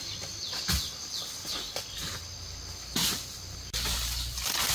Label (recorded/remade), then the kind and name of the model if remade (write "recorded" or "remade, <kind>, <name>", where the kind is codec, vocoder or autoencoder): recorded